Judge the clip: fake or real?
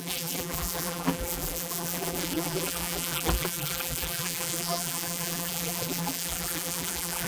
fake